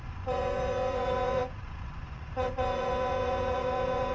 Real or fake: fake